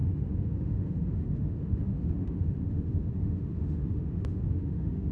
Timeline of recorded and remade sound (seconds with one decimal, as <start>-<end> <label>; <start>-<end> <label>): 0.0-5.1 remade

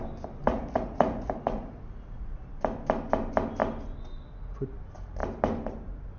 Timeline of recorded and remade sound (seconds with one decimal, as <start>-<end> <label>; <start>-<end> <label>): 0.0-0.4 recorded; 0.4-2.5 remade; 2.5-6.2 recorded